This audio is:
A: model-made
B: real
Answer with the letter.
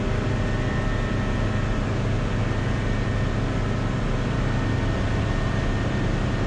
B